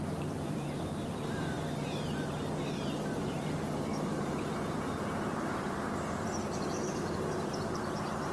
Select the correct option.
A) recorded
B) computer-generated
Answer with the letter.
B